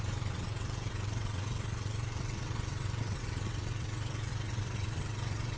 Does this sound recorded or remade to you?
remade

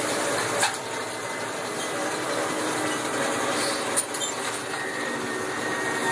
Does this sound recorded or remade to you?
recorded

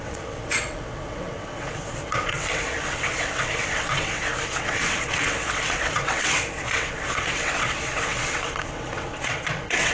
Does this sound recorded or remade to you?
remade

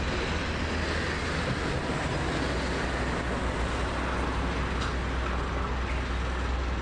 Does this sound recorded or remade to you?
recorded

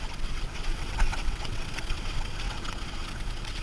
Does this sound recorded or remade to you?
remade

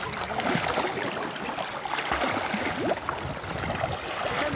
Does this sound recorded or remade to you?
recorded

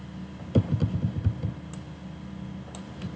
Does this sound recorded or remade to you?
recorded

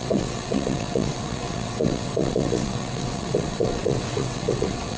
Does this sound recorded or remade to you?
remade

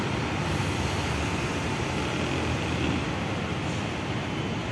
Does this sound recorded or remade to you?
recorded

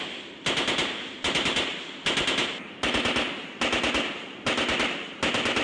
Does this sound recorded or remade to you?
recorded